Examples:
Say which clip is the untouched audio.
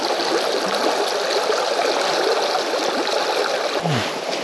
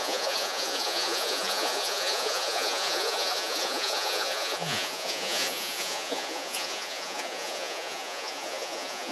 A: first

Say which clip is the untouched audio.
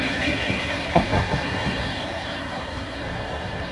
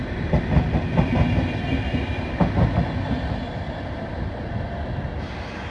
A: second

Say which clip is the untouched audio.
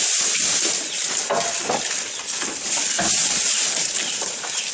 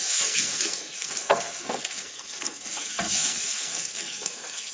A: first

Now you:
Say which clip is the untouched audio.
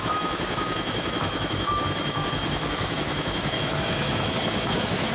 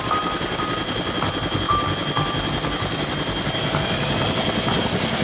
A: second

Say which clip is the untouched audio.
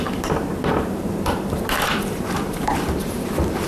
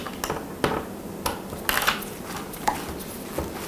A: second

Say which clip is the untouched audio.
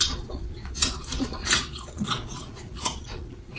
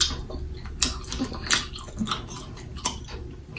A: second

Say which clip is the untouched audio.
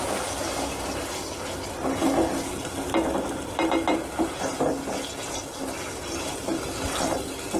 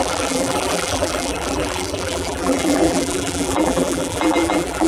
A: first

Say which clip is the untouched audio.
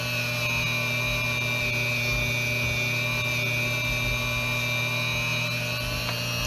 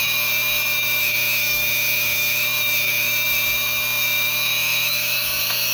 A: first